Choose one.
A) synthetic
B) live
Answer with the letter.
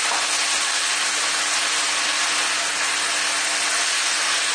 B